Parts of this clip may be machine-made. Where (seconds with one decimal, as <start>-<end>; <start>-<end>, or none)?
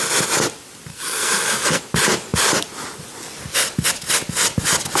0.9-1.8